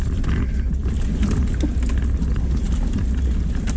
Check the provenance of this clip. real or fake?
real